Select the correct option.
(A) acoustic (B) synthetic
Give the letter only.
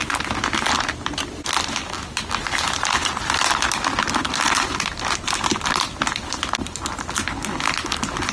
A